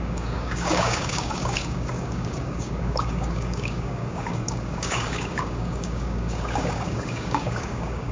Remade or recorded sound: remade